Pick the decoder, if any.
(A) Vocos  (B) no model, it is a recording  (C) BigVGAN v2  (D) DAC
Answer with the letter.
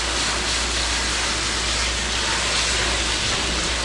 B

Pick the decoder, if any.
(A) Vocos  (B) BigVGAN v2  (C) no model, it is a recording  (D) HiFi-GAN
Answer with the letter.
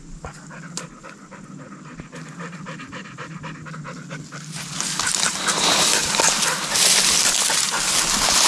C